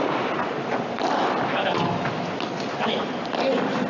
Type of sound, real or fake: real